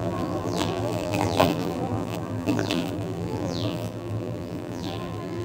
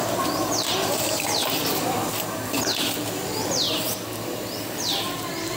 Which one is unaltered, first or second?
second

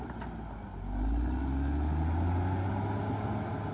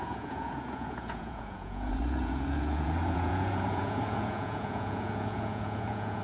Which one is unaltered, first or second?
first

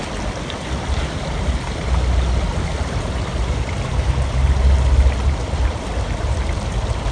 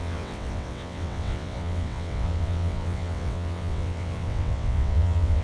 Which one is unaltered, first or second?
first